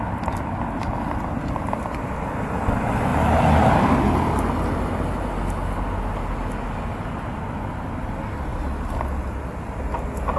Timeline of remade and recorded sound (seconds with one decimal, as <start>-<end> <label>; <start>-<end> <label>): 0.0-10.4 recorded